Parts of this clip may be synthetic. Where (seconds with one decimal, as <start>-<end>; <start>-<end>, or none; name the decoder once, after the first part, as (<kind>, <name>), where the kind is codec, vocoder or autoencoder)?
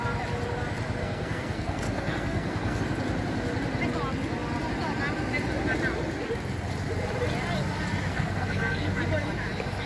1.0-2.8 (codec, SNAC); 8.1-8.9